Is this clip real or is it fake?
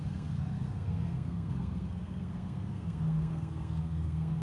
fake